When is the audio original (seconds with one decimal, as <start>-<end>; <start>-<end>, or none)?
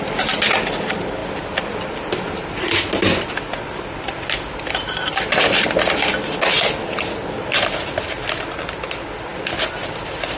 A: 0.0-10.4